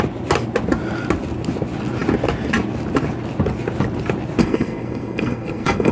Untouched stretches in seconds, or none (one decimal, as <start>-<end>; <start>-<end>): 0.0-4.4